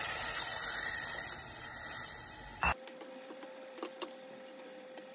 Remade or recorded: remade